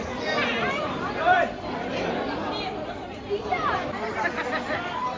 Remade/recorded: remade